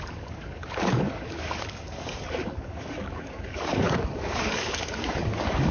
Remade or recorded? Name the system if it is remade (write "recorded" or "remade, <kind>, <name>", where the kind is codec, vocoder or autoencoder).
remade, codec, DAC